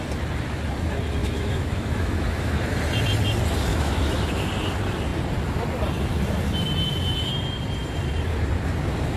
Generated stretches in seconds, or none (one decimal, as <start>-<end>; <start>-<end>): 1.2-2.6; 3.7-4.5